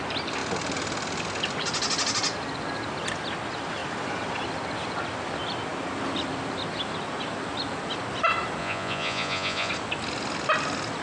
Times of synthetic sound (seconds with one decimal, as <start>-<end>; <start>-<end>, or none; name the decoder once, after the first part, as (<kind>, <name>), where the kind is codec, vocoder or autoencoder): 8.6-9.7 (vocoder, Vocos)